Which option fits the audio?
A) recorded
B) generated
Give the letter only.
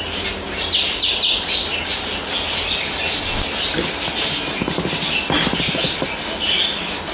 A